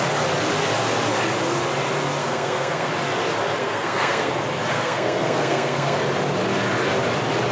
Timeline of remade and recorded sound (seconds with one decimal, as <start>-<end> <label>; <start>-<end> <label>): 0.0-2.2 recorded; 2.2-2.9 remade; 2.9-3.6 recorded; 3.6-4.3 remade; 4.3-4.7 recorded; 4.7-6.0 remade; 6.0-7.5 recorded